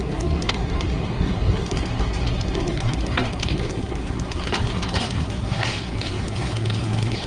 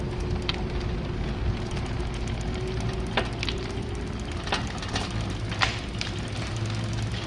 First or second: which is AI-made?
first